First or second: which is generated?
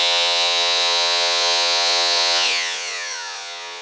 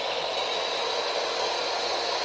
first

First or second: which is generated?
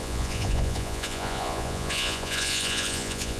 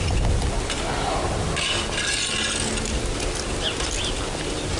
first